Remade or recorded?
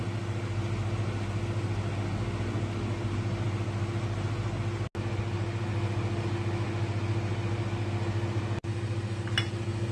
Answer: recorded